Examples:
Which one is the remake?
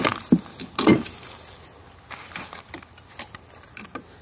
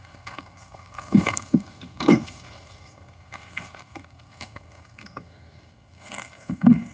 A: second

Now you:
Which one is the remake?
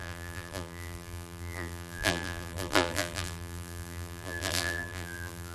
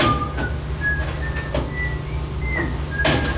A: first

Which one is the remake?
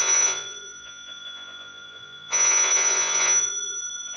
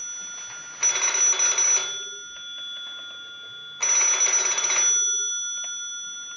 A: first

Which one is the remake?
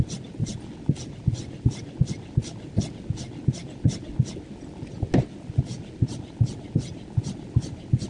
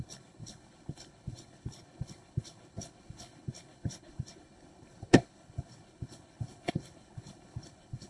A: second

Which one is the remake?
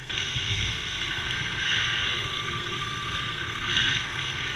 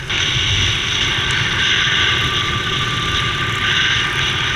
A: first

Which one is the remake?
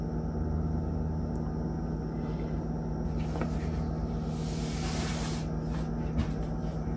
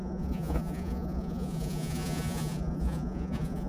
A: second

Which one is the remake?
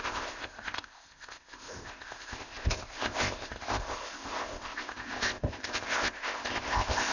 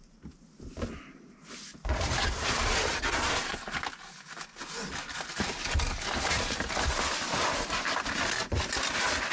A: first